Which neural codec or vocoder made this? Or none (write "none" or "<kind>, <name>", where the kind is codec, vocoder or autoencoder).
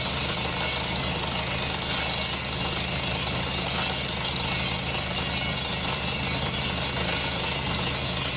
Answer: none